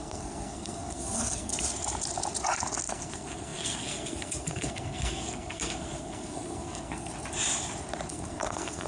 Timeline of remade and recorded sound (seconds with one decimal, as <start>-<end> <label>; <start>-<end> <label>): 0.0-1.5 remade; 1.5-2.9 recorded; 2.9-7.1 remade; 7.1-8.1 recorded; 8.1-8.9 remade